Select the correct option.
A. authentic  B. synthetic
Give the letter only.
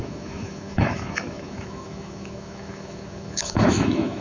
B